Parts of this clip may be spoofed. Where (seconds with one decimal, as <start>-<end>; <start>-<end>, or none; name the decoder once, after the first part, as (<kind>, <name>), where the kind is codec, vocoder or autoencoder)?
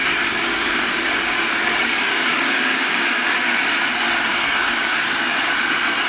0.0-3.7 (codec, DAC); 4.3-5.5